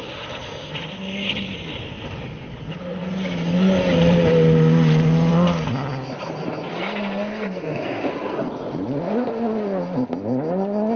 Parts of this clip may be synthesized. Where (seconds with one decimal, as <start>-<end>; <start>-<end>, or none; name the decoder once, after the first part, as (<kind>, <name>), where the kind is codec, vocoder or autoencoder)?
6.7-8.5 (codec, SNAC)